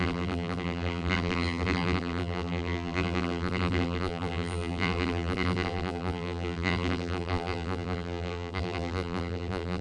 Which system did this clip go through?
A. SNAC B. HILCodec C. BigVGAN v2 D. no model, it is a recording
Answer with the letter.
C